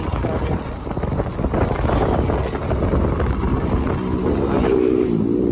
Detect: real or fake real